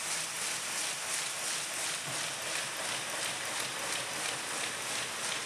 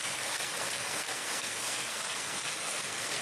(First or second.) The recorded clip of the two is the first